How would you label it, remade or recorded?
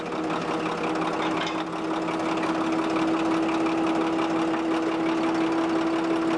recorded